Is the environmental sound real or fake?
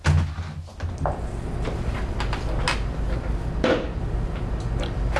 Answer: real